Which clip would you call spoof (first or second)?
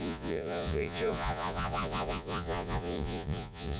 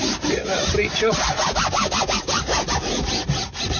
first